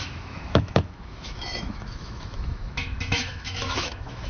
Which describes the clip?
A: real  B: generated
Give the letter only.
B